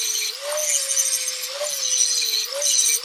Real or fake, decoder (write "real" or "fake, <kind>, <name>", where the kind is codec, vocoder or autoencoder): real